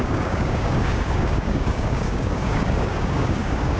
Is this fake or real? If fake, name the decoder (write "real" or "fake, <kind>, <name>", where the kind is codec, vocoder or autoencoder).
fake, codec, DAC